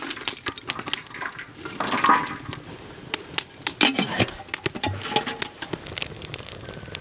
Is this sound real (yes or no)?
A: yes